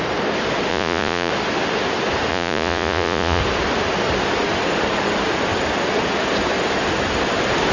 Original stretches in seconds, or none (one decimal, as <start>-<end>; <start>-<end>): 0.0-0.7; 1.3-2.3; 3.4-7.7